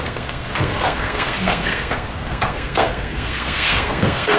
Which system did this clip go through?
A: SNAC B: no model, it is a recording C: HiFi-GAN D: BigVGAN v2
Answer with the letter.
A